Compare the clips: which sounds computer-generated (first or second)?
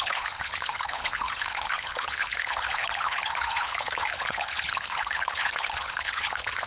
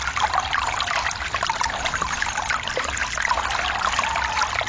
first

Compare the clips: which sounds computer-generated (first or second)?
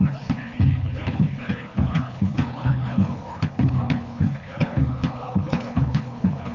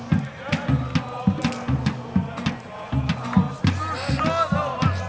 first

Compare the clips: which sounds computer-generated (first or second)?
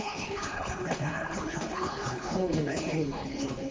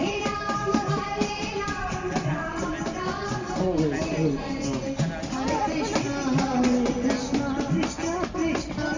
first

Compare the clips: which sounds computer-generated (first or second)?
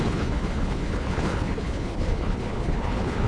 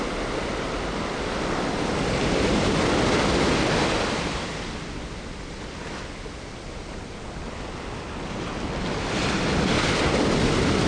first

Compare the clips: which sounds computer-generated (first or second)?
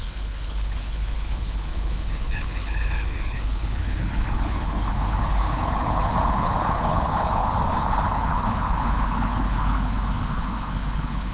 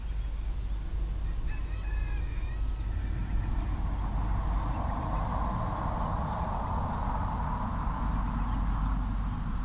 first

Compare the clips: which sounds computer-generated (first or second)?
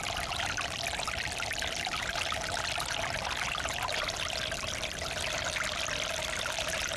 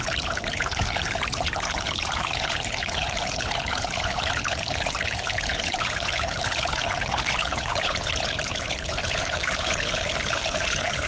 second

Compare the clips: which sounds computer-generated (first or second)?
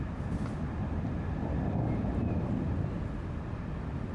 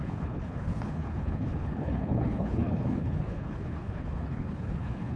second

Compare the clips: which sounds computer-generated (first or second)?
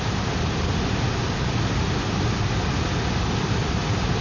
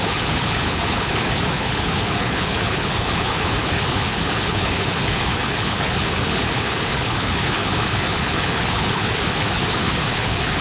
second